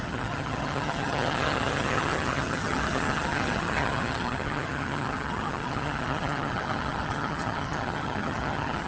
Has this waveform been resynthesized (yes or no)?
yes